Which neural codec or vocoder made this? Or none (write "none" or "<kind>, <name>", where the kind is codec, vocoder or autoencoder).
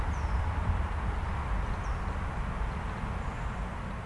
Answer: none